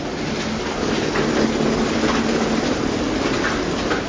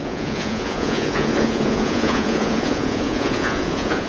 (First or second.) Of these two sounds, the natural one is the first